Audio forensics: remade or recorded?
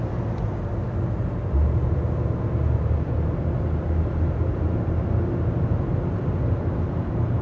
recorded